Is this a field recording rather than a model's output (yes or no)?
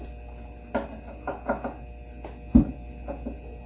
yes